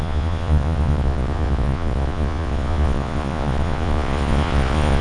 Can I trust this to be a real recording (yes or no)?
no